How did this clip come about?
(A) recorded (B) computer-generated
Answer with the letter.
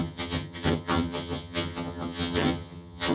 B